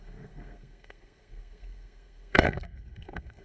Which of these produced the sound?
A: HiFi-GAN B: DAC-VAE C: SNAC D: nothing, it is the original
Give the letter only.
C